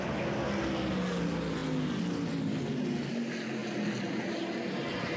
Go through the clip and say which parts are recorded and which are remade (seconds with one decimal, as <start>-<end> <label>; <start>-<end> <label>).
0.0-5.2 recorded